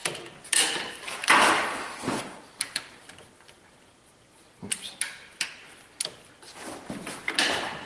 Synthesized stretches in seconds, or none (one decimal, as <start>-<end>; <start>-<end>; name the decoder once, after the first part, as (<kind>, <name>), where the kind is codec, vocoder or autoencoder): 0.0-2.2 (vocoder, BigVGAN v2)